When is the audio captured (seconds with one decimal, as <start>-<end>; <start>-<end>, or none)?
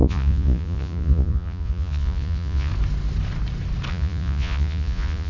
2.7-3.9